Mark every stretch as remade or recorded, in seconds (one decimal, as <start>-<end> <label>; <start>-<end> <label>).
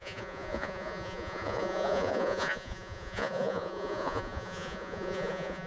0.0-5.7 remade